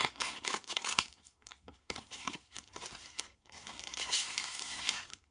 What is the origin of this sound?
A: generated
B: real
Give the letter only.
A